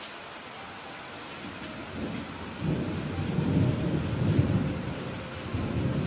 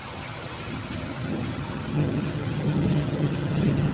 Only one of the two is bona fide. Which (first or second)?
first